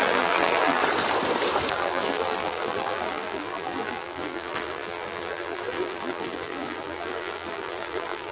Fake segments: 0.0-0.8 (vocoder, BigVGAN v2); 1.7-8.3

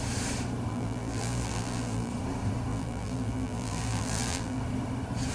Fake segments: 0.7-2.1 (vocoder, BigVGAN v2); 2.7-4.6

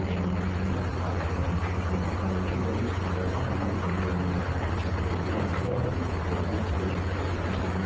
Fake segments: 0.9-1.9 (vocoder, BigVGAN v2); 4.9-6.3

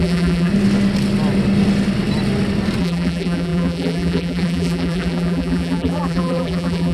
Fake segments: 0.0-0.5 (vocoder, BigVGAN v2); 2.8-6.9

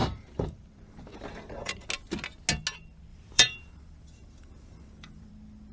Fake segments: 0.0-1.9 (vocoder, BigVGAN v2); 3.1-5.3

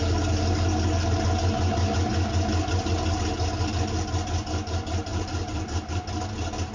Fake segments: 5.1-6.0 (vocoder, BigVGAN v2)

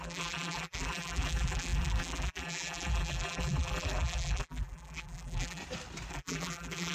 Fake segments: 0.0-5.6 (vocoder, BigVGAN v2); 6.1-6.9